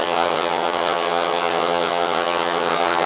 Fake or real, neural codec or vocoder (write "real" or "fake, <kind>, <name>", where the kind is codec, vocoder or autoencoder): fake, vocoder, HiFi-GAN